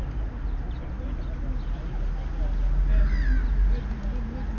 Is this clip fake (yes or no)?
no